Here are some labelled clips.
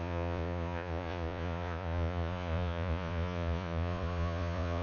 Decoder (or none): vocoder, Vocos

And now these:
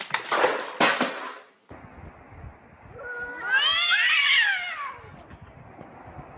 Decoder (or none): none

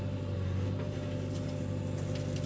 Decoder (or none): none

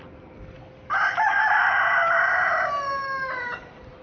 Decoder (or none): none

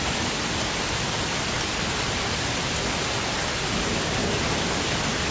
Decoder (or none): none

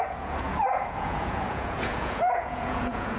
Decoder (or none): vocoder, Vocos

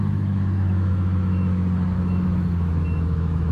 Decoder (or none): autoencoder, DAC-VAE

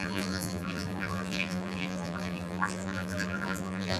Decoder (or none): vocoder, BigVGAN v2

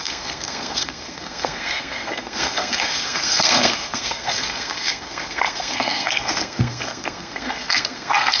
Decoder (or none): codec, SNAC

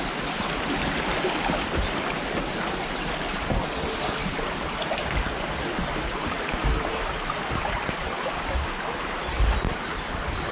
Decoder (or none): none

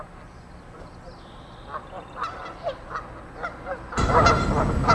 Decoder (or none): none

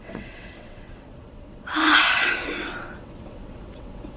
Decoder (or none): vocoder, WaveNeXt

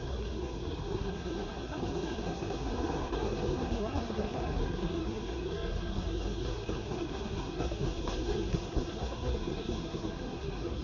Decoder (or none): codec, SNAC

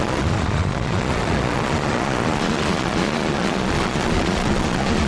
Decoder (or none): vocoder, Vocos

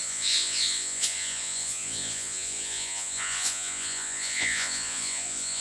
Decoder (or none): vocoder, Vocos